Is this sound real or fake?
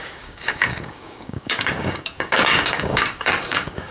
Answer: fake